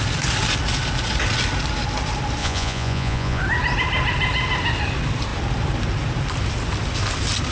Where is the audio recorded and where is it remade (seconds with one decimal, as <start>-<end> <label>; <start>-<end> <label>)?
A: 0.0-2.4 recorded; 2.4-3.4 remade; 3.4-7.5 recorded